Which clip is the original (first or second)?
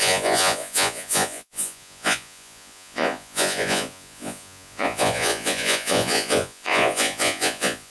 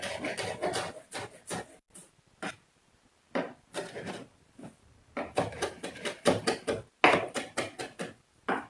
second